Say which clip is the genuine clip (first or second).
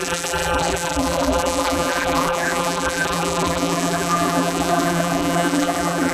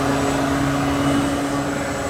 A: second